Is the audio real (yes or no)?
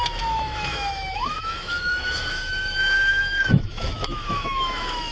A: no